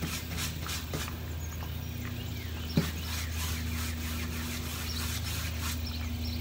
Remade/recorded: recorded